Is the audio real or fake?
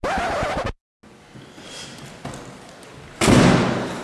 real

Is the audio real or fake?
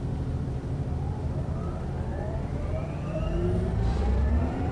fake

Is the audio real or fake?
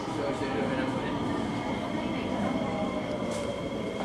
fake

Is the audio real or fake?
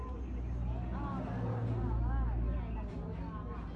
real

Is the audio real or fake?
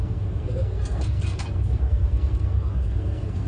fake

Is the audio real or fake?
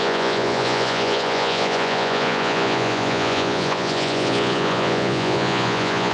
fake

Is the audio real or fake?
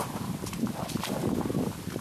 real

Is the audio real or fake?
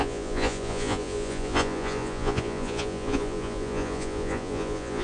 fake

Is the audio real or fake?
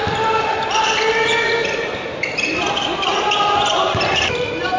real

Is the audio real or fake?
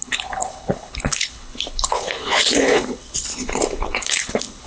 fake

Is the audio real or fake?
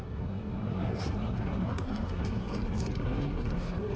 fake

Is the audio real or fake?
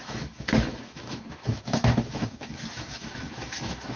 fake